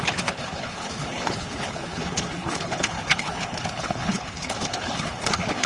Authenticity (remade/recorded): remade